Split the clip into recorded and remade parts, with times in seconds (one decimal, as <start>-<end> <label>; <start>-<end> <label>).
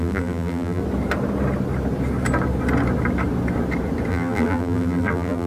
0.0-0.8 remade; 0.8-4.1 recorded; 4.1-5.5 remade